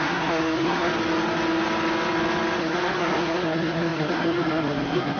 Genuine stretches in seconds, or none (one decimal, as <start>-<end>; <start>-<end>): 0.9-2.6